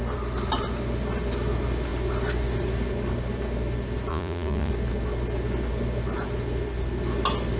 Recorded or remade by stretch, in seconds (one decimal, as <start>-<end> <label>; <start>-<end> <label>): 0.0-4.1 recorded; 4.1-4.7 remade; 4.7-7.6 recorded